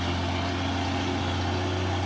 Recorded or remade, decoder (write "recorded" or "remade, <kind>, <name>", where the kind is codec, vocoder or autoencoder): recorded